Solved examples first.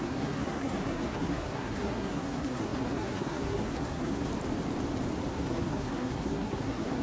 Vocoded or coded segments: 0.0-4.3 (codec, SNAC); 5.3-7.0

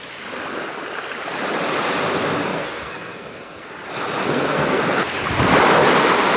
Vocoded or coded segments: 2.5-3.7 (codec, SNAC); 4.2-4.8

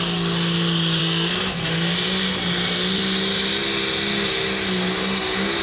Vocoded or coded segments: 1.0-1.7 (codec, SNAC)

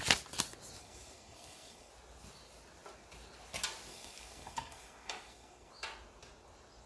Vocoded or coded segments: 0.8-1.9 (codec, SNAC); 3.9-5.7

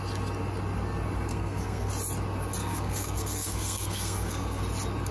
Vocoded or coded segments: 1.3-1.9 (codec, SNAC); 2.6-4.6

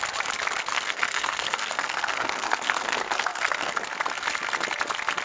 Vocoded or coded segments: 0.7-3.8 (codec, SNAC)

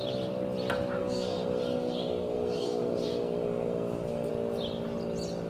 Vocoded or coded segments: 1.0-4.3 (codec, SNAC)

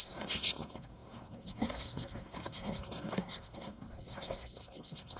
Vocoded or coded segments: 0.0-5.2 (codec, SNAC)